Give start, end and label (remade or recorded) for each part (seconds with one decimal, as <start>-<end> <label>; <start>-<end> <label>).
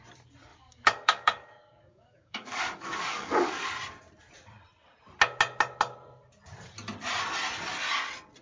0.0-0.5 recorded; 0.5-3.7 remade; 3.7-8.4 recorded